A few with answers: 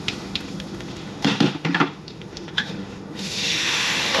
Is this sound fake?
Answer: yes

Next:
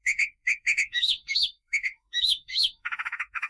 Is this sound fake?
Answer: yes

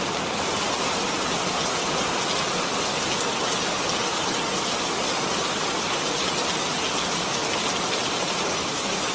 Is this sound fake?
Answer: no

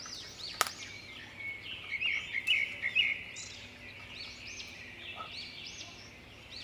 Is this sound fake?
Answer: no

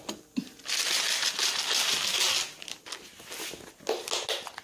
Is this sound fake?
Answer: no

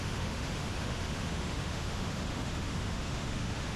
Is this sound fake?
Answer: yes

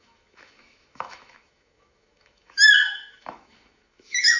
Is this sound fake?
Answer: yes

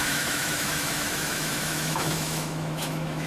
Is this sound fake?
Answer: yes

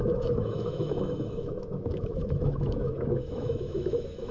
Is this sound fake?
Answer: yes